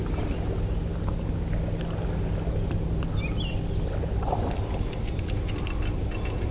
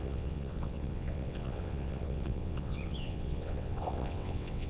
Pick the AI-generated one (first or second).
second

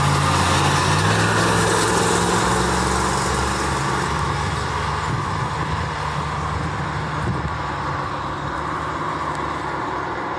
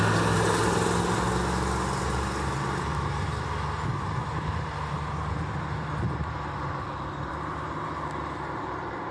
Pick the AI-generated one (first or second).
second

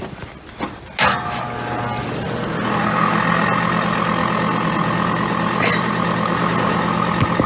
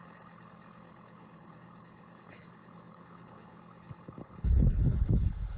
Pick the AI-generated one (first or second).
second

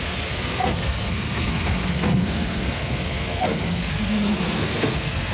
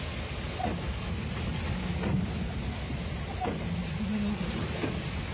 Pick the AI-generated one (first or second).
first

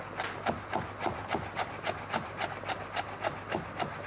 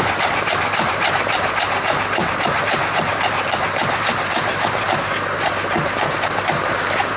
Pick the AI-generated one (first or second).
second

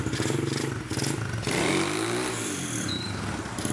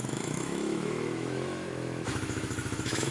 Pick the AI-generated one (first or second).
second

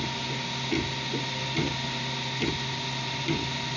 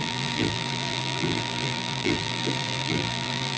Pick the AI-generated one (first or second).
second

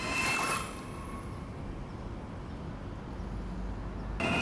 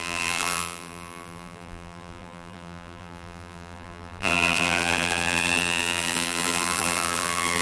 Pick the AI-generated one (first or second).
second